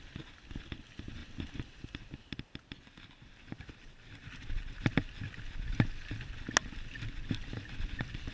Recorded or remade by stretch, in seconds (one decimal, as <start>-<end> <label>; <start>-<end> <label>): 0.0-8.3 recorded